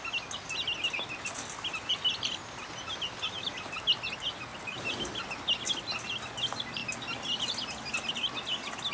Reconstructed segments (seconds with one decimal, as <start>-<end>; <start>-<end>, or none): none